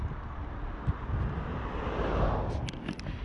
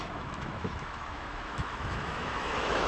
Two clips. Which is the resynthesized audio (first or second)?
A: second